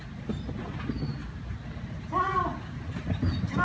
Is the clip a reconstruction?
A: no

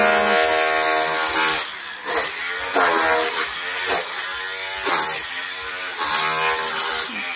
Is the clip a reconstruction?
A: no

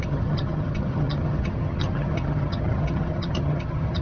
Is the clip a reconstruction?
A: yes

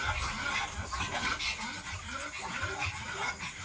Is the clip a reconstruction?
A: no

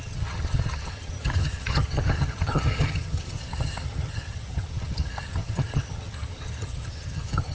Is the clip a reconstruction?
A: yes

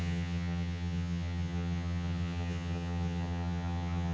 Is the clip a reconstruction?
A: yes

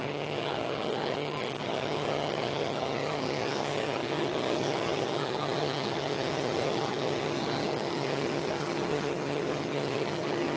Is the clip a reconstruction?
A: yes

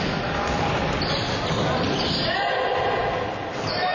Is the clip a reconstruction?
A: no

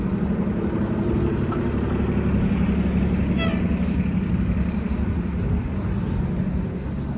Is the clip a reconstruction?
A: no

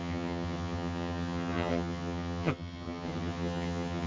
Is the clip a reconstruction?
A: yes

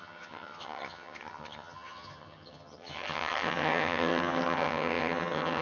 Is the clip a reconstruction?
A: yes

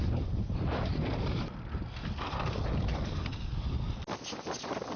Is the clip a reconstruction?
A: no